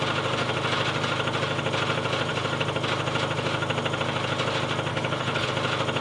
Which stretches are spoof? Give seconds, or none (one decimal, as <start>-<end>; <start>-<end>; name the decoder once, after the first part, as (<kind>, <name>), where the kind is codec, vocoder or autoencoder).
4.9-5.5 (codec, HILCodec)